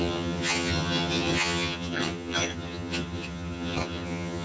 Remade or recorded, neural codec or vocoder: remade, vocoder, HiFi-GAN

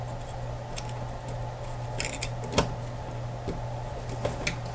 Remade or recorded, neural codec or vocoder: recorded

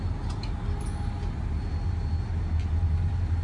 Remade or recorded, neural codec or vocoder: recorded